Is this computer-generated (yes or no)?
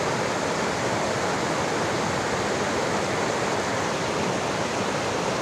yes